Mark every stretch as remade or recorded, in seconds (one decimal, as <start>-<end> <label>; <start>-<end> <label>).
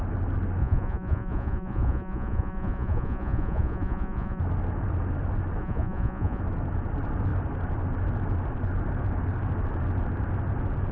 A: 0.0-0.6 recorded; 0.6-4.4 remade; 4.4-5.6 recorded; 5.6-6.4 remade; 6.4-10.9 recorded